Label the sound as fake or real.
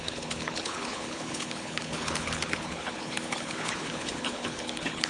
fake